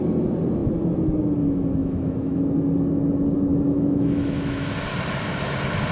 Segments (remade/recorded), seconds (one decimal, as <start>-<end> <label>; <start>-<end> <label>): 0.0-1.8 recorded; 1.8-2.4 remade; 2.4-3.5 recorded; 3.5-4.7 remade; 4.7-5.9 recorded